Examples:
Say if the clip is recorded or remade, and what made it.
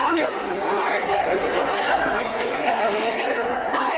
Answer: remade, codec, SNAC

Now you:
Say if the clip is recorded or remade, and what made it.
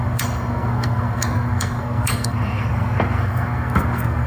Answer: remade, codec, SNAC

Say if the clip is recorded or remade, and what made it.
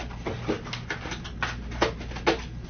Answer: recorded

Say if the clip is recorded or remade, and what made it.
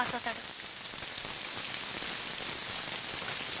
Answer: recorded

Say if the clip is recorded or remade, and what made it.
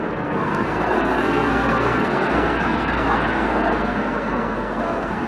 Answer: remade, codec, SNAC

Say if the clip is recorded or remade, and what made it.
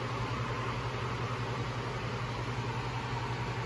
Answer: recorded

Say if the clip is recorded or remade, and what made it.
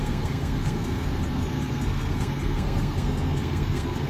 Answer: remade, codec, SNAC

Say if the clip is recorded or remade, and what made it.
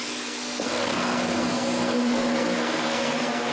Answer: remade, codec, SNAC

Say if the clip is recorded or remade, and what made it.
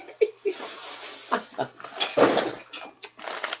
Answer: recorded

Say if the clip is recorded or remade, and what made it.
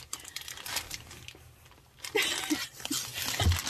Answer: recorded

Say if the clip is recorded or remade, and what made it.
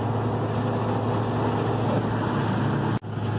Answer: recorded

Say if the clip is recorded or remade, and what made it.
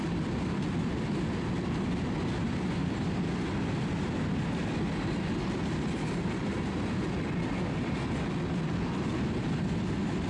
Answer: recorded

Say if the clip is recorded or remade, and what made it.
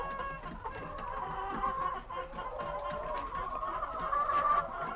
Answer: recorded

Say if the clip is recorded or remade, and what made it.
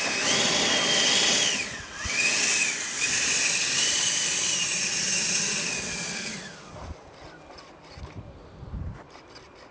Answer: recorded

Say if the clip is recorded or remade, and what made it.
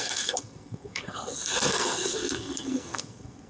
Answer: remade, codec, SNAC